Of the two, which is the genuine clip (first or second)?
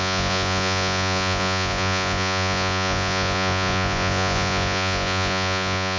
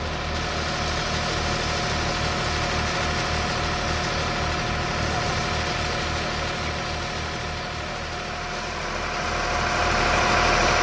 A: second